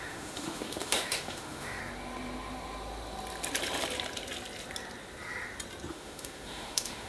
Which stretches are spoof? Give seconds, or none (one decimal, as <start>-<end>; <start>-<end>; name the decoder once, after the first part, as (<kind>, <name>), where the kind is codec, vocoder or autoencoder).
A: 0.0-1.8 (autoencoder, DAC-VAE); 5.9-7.1